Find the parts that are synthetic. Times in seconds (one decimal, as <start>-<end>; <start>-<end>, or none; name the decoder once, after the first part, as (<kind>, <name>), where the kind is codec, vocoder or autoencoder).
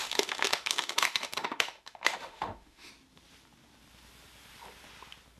0.0-2.9 (autoencoder, DAC-VAE)